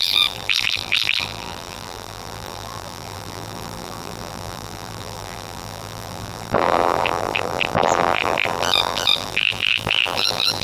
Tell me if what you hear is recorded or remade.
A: remade